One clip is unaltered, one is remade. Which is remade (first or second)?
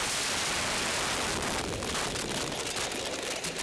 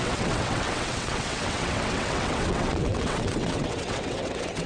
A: second